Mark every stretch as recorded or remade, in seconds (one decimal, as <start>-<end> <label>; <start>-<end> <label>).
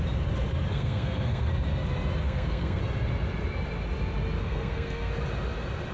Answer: 0.0-0.7 recorded; 0.7-1.5 remade; 1.5-2.2 recorded; 2.2-2.8 remade; 2.8-4.4 recorded; 4.4-5.1 remade; 5.1-5.9 recorded